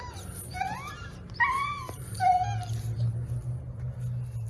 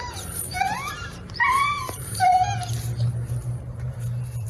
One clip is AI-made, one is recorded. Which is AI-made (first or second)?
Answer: second